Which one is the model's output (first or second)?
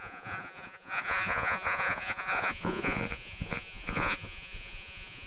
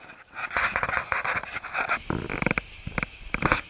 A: first